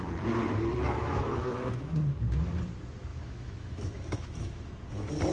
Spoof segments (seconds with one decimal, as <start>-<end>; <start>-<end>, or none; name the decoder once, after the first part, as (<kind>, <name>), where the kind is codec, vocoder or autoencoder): 0.7-1.9 (autoencoder, DAC-VAE); 3.1-4.7